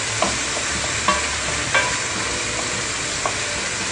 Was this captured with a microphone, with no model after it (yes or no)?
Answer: no